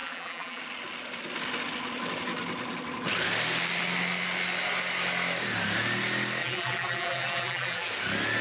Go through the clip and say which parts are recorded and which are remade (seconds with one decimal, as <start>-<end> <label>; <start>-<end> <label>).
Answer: 0.0-0.6 remade; 0.6-6.4 recorded; 6.4-7.9 remade; 7.9-8.4 recorded